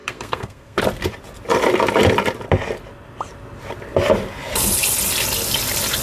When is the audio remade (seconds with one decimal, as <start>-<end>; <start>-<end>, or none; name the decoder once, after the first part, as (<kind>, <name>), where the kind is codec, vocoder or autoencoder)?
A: 0.0-0.8 (codec, SNAC)